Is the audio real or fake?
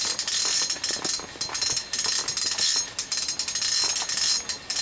real